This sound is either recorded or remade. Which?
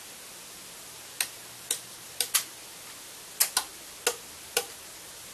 recorded